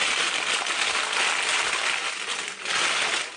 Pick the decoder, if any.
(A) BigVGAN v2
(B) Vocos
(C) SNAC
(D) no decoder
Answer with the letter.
D